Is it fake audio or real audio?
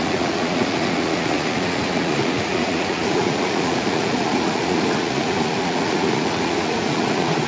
fake